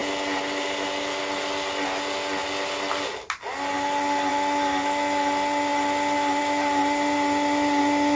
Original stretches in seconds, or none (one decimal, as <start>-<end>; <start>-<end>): 0.0-8.2